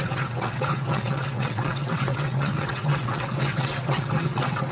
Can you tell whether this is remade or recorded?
remade